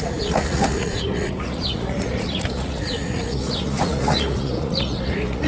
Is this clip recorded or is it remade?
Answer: remade